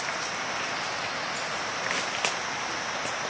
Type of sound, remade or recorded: recorded